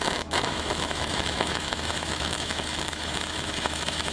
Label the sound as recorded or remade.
remade